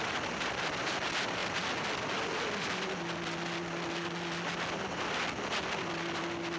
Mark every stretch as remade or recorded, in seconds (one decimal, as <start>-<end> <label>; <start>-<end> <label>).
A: 0.0-6.6 recorded